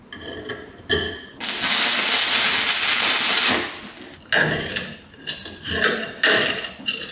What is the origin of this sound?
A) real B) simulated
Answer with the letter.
A